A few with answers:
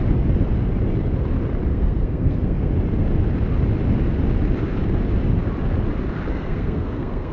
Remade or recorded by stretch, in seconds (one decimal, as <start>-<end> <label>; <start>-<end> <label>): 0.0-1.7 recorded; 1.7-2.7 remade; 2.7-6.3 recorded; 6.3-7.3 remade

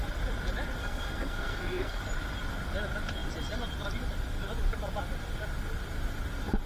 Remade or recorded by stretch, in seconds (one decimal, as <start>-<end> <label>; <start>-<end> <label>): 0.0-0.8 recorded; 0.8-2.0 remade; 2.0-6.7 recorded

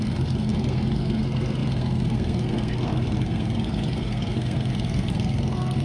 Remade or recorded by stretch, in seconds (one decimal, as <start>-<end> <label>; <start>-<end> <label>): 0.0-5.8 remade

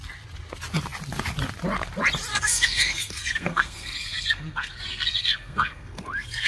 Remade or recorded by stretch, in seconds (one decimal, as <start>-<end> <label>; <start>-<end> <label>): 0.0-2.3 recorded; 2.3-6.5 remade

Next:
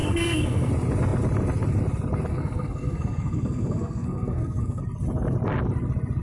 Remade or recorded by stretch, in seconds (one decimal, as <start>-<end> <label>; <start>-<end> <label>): 0.0-0.7 remade; 0.7-2.3 recorded; 2.3-4.8 remade; 4.8-6.2 recorded

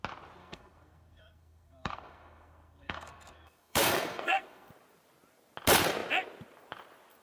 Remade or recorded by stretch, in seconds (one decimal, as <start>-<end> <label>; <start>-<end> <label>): 0.0-0.4 recorded; 0.4-4.7 remade; 4.7-7.2 recorded

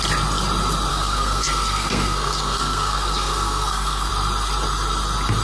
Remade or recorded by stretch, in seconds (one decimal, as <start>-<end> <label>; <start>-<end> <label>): 0.0-0.9 recorded; 0.9-4.1 remade; 4.1-5.4 recorded